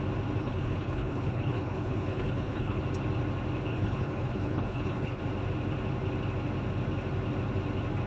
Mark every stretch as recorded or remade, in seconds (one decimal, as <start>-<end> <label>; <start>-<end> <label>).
0.0-0.4 recorded; 0.4-2.8 remade; 2.8-3.7 recorded; 3.7-5.2 remade; 5.2-8.1 recorded